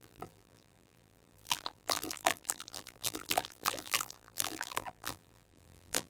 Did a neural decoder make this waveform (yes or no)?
yes